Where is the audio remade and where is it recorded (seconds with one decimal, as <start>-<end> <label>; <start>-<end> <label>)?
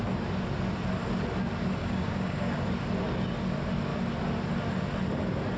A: 0.0-1.8 recorded; 1.8-2.7 remade; 2.7-5.6 recorded